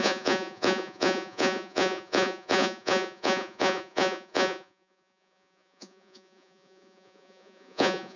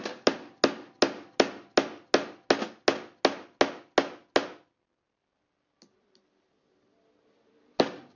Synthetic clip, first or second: first